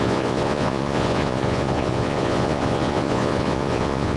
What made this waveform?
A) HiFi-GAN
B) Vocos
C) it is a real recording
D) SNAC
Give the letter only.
B